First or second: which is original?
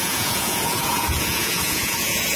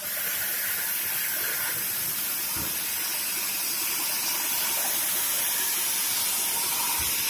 second